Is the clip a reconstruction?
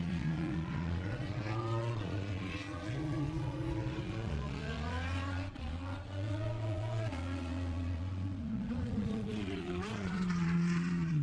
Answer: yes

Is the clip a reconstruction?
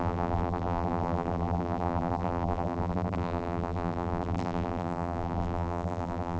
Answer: yes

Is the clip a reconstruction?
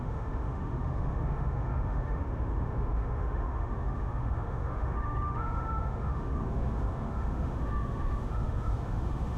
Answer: yes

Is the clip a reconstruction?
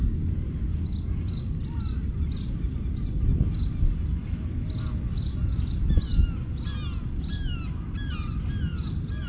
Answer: no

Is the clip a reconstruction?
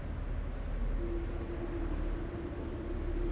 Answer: no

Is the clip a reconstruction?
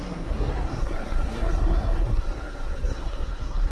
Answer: yes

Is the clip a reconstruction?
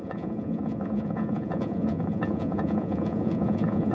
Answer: yes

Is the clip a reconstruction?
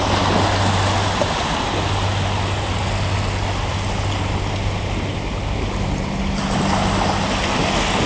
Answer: no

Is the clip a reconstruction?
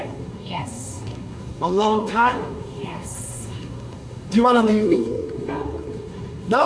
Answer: yes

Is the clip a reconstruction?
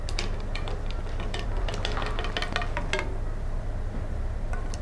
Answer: no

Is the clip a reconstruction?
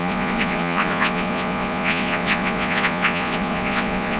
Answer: yes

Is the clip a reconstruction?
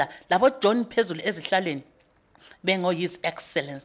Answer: no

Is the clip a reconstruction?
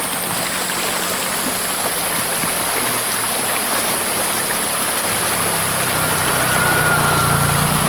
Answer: no